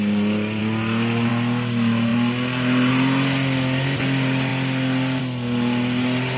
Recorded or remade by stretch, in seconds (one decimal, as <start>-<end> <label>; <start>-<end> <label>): 0.0-6.4 recorded